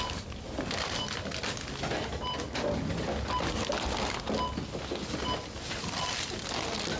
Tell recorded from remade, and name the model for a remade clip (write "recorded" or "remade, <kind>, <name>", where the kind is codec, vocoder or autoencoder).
recorded